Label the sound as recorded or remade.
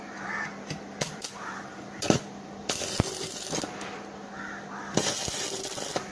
remade